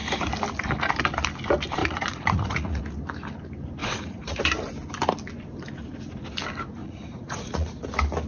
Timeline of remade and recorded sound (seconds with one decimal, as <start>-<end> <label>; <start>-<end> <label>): 0.0-1.8 recorded; 1.8-2.8 remade; 2.8-3.8 recorded; 3.8-4.4 remade; 4.4-6.8 recorded; 6.8-7.8 remade; 7.8-8.3 recorded